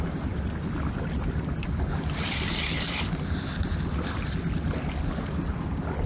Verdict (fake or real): real